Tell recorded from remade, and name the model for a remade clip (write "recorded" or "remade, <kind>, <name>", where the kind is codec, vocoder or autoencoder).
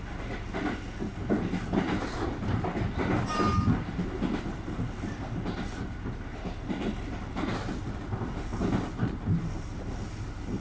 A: recorded